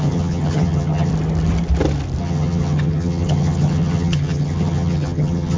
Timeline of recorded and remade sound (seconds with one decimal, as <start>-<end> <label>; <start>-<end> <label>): 0.0-1.1 remade; 1.1-2.2 recorded; 2.2-5.6 remade